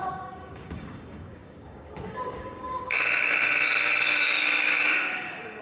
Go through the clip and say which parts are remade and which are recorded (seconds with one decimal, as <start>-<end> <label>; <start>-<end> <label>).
0.0-5.6 remade